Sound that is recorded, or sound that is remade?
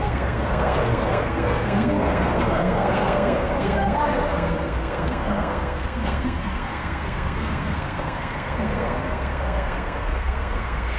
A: remade